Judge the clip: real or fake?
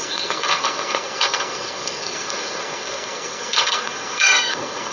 fake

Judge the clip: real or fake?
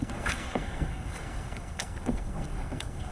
fake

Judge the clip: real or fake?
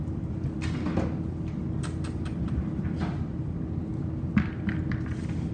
real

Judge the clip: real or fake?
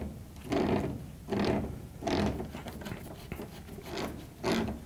real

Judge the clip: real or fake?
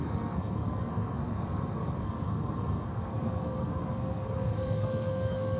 fake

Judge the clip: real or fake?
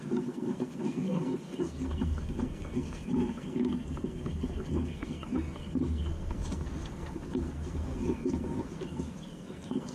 fake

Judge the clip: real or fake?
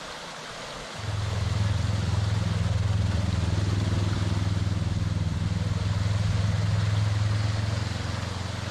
real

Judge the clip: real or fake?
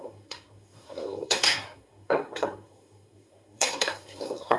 fake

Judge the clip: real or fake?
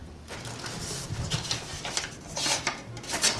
real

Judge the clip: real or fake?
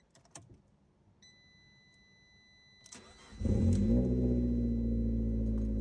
real